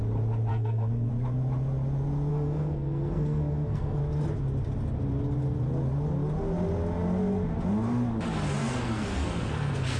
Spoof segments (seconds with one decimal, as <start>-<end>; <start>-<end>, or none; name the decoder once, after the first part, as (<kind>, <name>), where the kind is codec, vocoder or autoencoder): 0.5-1.1 (codec, SNAC); 2.3-4.0; 8.6-10.0

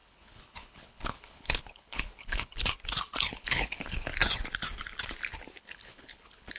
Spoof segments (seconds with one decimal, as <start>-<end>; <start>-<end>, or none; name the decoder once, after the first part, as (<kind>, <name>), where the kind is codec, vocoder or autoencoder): 0.0-2.6 (codec, HILCodec); 3.3-4.1; 5.6-6.6

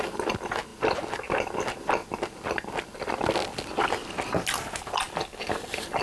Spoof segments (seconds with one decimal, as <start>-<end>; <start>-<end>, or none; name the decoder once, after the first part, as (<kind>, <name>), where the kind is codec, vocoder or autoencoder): none

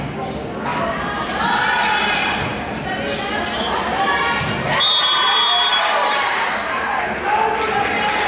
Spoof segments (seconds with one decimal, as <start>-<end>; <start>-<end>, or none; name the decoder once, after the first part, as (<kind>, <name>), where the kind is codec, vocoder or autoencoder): 0.0-0.7 (codec, DAC); 5.7-7.2

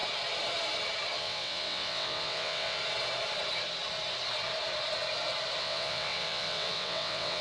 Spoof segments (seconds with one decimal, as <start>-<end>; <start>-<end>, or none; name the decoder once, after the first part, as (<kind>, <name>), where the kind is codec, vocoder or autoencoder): 1.2-2.8 (vocoder, WaveNeXt); 5.6-7.4

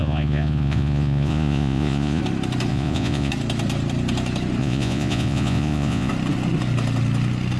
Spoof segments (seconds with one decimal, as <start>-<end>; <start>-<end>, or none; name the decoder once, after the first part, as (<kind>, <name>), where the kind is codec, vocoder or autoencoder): 0.0-2.2 (vocoder, Vocos); 2.7-3.3; 4.6-6.1

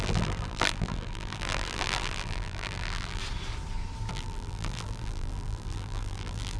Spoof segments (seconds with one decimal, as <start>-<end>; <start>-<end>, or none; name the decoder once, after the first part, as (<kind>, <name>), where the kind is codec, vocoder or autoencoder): 0.0-3.2 (vocoder, BigVGAN v2); 4.1-6.6